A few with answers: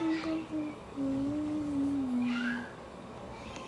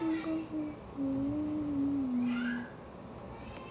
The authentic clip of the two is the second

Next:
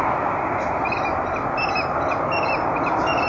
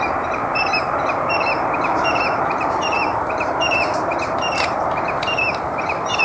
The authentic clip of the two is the first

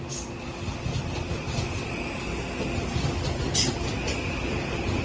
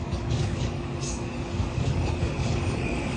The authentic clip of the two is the first